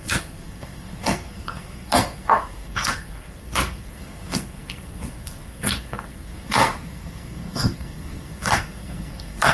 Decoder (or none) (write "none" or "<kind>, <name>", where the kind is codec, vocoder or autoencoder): codec, SNAC